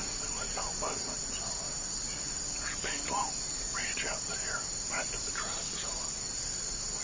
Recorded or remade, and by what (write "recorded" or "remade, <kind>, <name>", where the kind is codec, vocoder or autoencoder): recorded